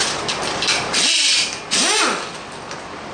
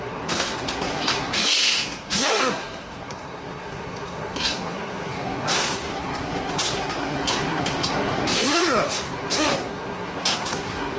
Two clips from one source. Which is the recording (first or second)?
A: first